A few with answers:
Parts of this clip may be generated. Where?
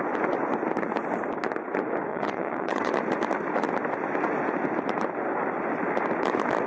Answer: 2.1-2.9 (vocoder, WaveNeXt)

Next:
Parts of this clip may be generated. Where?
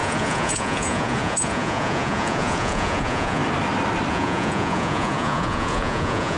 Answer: 0.0-3.4 (vocoder, Vocos); 4.1-6.4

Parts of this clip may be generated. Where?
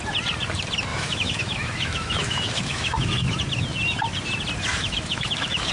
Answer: 0.9-3.4 (autoencoder, DAC-VAE); 4.7-5.7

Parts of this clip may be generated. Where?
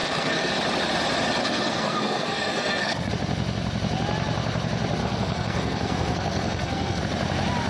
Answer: 0.0-0.5 (codec, SNAC); 1.4-3.1; 5.0-7.0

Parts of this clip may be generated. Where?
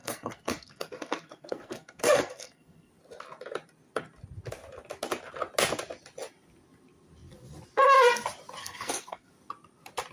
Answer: 0.0-2.9 (codec, SNAC); 8.6-9.3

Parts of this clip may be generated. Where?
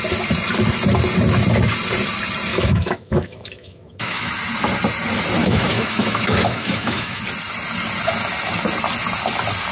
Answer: 2.5-4.3 (autoencoder, DAC-VAE); 5.4-7.2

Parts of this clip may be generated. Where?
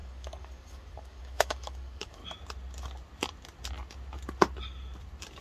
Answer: 0.0-2.2 (codec, DAC)